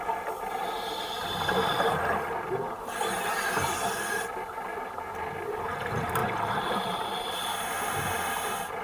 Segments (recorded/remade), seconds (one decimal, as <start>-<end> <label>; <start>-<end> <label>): 0.0-6.2 recorded; 6.2-7.3 remade; 7.3-8.8 recorded